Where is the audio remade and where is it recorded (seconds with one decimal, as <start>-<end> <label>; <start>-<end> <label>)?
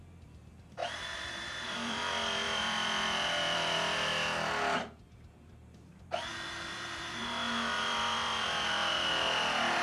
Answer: 0.0-4.1 remade; 4.1-6.7 recorded; 6.7-7.2 remade; 7.2-7.8 recorded; 7.8-9.8 remade